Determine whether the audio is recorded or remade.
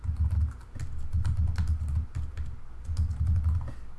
recorded